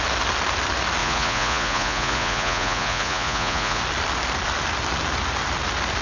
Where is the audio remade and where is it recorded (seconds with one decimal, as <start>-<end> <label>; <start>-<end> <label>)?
0.0-1.0 recorded; 1.0-3.8 remade; 3.8-6.0 recorded